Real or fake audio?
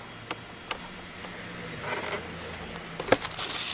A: real